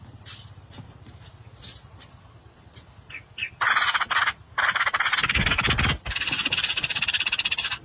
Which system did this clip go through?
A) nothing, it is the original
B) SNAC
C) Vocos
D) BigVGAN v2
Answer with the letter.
A